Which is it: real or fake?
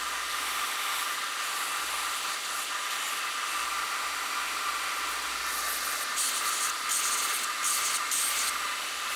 real